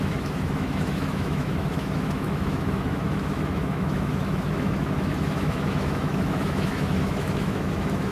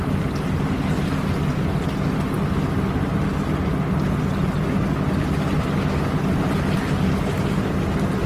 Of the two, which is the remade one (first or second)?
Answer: first